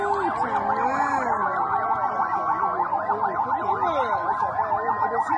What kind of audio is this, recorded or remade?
recorded